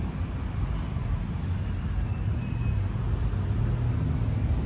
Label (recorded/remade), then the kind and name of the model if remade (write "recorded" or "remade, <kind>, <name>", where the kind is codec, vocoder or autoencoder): recorded